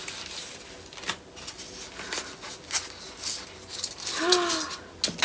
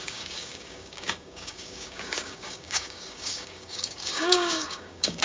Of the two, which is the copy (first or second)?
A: second